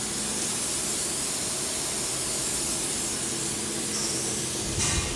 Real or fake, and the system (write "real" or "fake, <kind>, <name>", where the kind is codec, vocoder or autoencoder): real